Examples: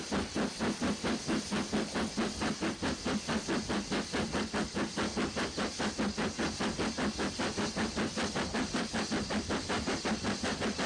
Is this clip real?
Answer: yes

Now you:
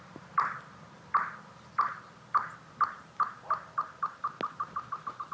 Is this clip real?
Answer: yes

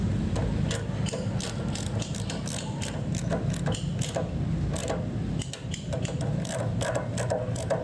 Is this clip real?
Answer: yes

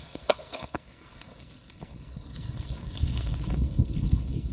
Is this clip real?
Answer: no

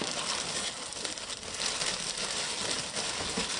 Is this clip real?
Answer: yes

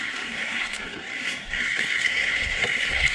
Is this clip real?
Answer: no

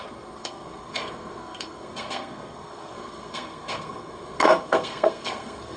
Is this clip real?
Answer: no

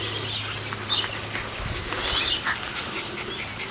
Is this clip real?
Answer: yes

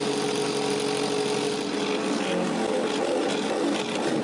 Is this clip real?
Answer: yes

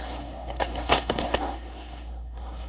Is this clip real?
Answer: no